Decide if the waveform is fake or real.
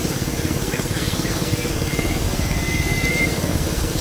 fake